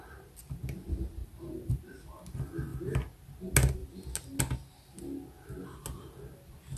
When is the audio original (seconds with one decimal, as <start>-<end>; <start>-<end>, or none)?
0.0-1.2; 1.8-6.8